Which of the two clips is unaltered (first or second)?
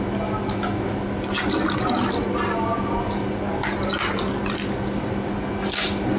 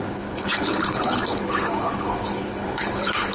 first